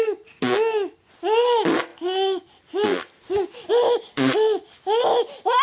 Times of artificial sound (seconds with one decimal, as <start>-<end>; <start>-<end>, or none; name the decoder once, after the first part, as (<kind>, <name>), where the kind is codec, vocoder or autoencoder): none